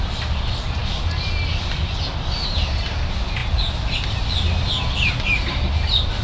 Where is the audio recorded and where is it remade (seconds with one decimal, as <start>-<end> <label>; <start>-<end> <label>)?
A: 0.0-6.2 recorded